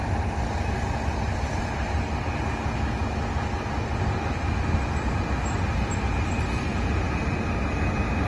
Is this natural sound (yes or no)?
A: yes